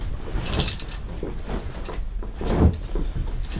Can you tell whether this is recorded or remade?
recorded